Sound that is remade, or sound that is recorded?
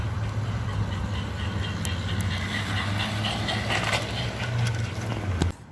recorded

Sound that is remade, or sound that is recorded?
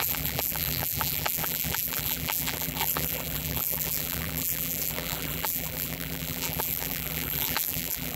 remade